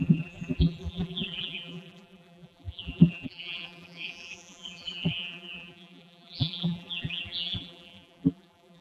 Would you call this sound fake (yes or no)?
yes